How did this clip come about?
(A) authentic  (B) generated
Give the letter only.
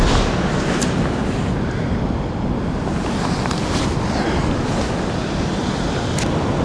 A